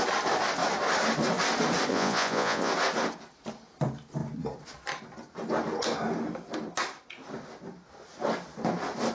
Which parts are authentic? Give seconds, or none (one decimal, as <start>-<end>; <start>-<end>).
0.0-1.9; 2.7-9.1